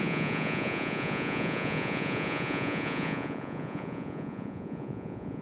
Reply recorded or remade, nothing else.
remade